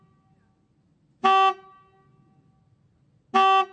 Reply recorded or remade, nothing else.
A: recorded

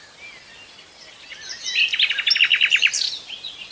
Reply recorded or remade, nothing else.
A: recorded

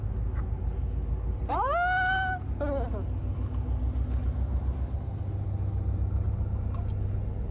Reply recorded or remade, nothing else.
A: recorded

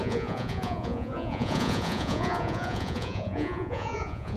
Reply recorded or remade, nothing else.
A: remade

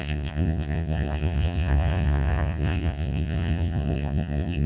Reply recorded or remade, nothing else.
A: remade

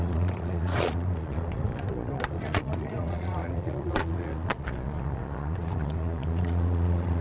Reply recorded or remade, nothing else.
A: remade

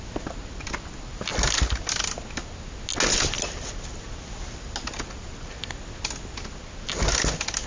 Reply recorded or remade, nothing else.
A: recorded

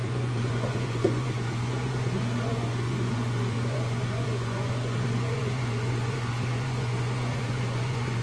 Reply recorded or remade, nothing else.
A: remade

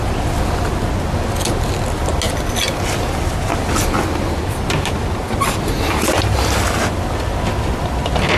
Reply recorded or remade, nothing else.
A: recorded